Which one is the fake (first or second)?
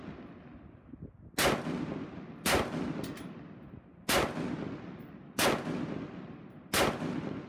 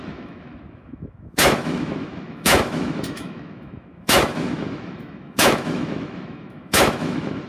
second